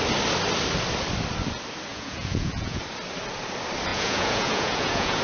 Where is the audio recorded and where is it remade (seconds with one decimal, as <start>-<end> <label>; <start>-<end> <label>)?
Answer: 0.0-1.9 recorded; 1.9-2.8 remade; 2.8-3.9 recorded; 3.9-5.2 remade